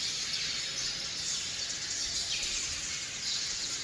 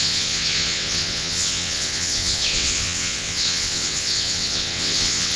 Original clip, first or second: first